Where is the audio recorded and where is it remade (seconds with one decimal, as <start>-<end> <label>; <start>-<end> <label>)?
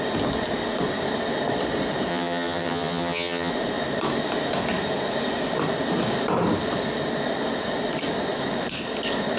0.0-2.1 recorded; 2.1-3.5 remade; 3.5-9.4 recorded